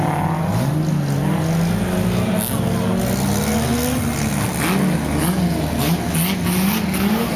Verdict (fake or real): real